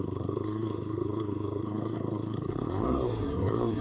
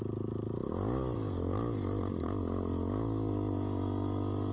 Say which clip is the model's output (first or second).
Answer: first